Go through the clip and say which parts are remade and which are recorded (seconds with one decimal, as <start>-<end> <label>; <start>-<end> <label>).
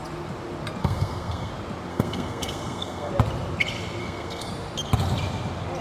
0.0-0.8 recorded; 0.8-1.5 remade; 1.5-1.9 recorded; 1.9-3.1 remade; 3.1-4.0 recorded; 4.0-4.5 remade; 4.5-5.8 recorded